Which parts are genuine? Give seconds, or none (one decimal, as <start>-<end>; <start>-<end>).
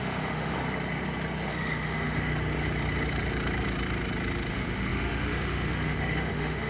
0.6-1.5; 2.3-4.5